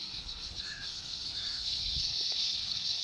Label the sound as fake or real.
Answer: fake